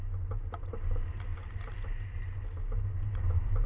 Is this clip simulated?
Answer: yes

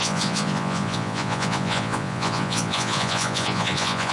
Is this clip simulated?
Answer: yes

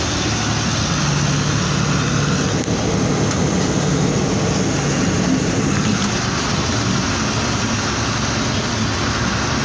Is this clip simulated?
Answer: no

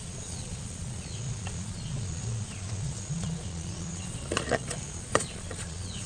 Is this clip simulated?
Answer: yes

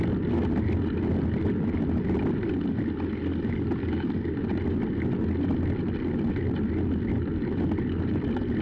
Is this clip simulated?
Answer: no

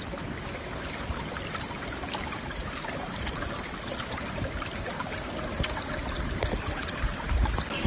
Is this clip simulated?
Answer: no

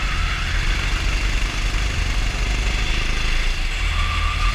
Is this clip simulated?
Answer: no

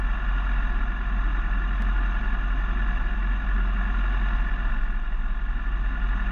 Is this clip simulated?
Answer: no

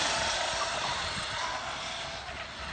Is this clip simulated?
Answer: no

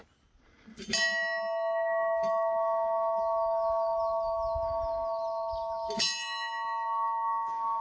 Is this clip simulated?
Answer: no